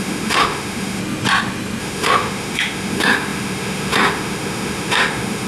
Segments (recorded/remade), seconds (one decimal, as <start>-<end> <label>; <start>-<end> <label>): 0.0-1.0 remade; 1.0-1.8 recorded; 1.8-5.5 remade